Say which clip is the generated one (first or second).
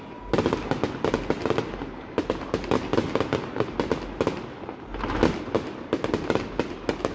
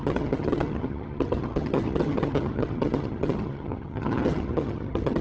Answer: second